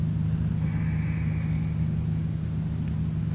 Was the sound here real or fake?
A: real